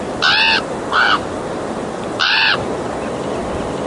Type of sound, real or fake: real